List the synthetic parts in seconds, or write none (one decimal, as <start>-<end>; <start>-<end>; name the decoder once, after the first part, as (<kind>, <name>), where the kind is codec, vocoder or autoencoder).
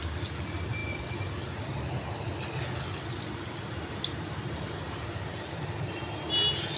none